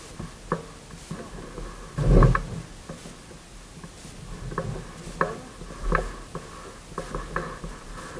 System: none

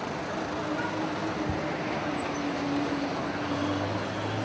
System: none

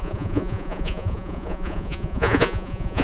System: vocoder, Vocos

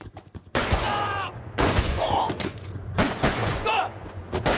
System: vocoder, Vocos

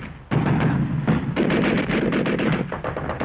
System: none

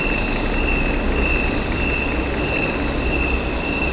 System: none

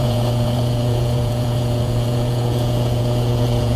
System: vocoder, Vocos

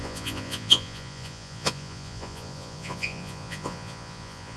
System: vocoder, Vocos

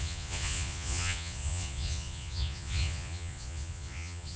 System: vocoder, Vocos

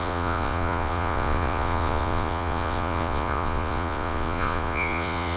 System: vocoder, Vocos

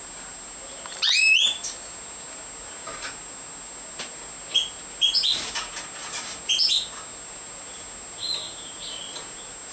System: none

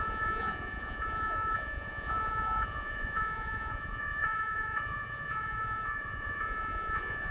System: vocoder, Vocos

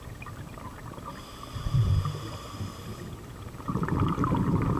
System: none